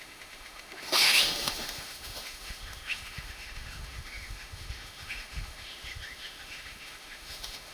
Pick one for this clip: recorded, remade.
remade